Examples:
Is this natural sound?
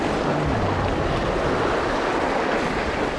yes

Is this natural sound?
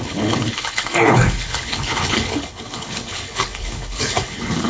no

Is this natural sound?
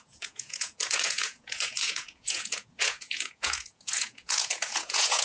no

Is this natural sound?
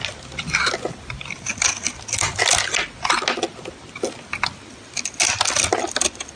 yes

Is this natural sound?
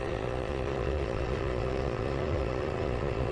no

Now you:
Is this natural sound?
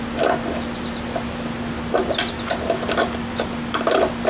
yes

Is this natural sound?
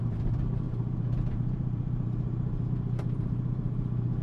no